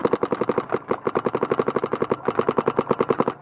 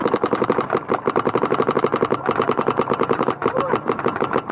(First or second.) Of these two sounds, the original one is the first